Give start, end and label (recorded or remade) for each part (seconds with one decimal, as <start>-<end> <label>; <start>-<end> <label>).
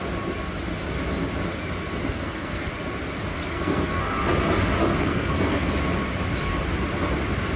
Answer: 0.0-2.0 recorded; 2.0-2.7 remade; 2.7-3.3 recorded; 3.3-4.0 remade; 4.0-4.8 recorded; 4.8-5.7 remade; 5.7-7.6 recorded